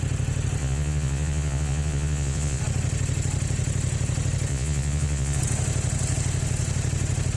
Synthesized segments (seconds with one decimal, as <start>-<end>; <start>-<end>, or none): 0.6-2.6; 4.5-5.4